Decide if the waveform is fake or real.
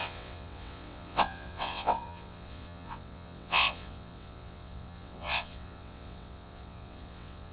fake